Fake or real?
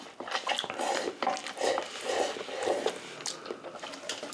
real